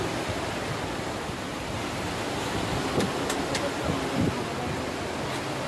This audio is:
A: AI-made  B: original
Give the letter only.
B